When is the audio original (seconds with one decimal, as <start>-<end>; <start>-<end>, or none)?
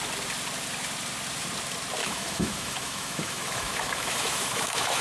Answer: 0.0-2.0